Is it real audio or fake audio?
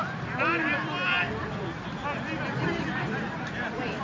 real